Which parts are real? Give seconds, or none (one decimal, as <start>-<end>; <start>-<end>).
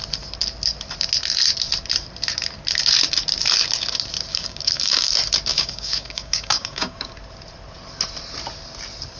0.0-4.3; 5.1-5.5; 7.1-9.2